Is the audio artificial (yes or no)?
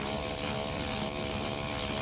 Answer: no